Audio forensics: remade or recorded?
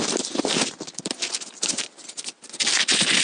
recorded